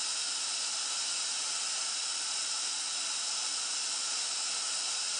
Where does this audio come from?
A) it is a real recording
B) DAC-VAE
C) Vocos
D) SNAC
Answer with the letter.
A